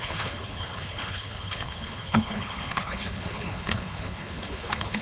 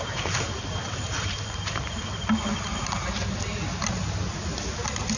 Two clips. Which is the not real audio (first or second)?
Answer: first